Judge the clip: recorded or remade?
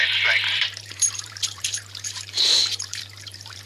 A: remade